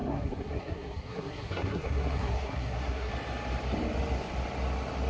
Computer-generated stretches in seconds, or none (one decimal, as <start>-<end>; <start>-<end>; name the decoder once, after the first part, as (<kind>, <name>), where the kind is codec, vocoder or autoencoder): 0.0-3.1 (codec, SNAC)